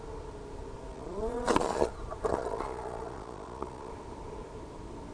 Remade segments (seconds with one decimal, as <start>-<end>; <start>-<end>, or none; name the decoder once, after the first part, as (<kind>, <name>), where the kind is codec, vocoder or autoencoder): 0.9-1.9 (vocoder, Vocos); 2.3-3.9